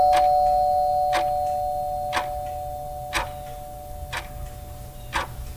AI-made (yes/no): no